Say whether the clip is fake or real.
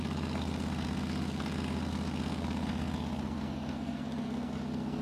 fake